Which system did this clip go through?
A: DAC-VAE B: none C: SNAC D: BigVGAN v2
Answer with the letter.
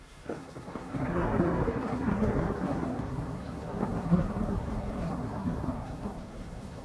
C